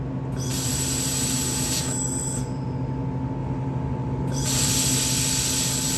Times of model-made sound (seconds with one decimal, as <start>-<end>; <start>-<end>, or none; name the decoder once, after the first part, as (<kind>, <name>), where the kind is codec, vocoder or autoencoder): 0.5-2.9 (vocoder, BigVGAN v2); 3.4-4.7